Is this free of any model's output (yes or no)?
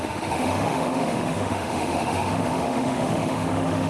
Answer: no